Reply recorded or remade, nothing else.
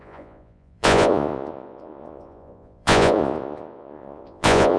remade